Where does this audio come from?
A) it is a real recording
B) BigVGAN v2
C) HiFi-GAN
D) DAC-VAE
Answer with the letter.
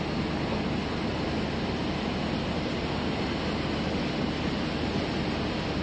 A